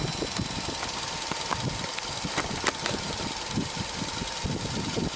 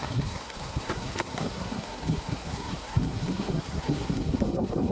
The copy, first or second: second